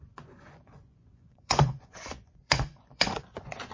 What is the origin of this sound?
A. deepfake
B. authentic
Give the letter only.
A